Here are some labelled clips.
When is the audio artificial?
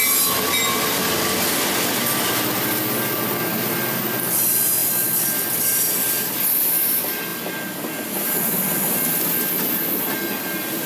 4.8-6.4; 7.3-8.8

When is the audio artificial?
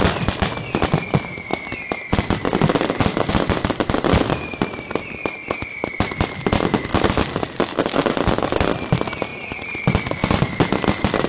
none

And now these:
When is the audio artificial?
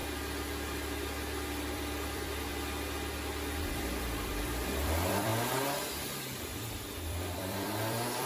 1.7-2.5; 3.7-5.3; 6.6-8.3